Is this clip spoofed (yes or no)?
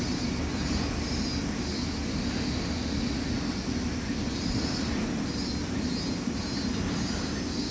no